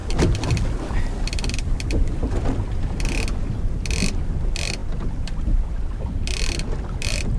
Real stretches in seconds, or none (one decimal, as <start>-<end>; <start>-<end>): 0.0-7.4